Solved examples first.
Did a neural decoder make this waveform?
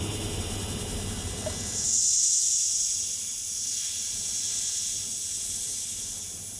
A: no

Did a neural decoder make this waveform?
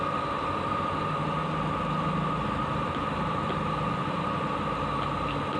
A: no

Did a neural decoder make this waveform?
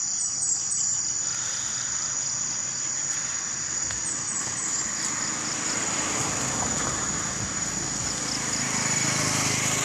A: no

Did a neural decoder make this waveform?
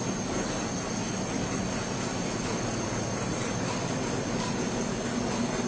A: no